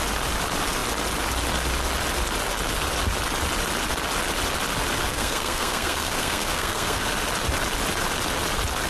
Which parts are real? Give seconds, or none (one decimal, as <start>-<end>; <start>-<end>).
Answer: 0.0-5.1; 7.1-8.9